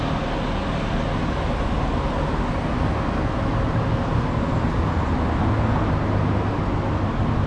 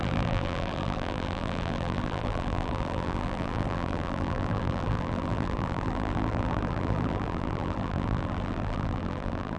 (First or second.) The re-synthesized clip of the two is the second